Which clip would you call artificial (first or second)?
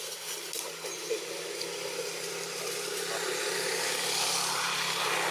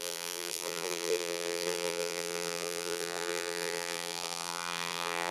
second